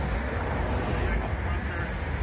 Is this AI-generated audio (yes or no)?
no